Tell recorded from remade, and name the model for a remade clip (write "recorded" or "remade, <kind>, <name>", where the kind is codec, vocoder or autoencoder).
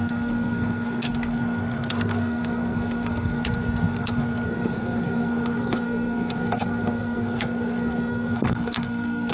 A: remade, codec, SNAC